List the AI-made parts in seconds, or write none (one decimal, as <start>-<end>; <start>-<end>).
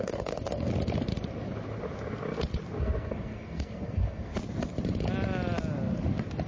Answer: 0.0-0.7; 2.8-4.3